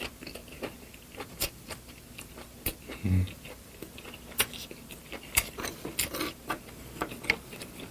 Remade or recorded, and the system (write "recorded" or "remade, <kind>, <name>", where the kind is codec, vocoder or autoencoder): remade, vocoder, BigVGAN v2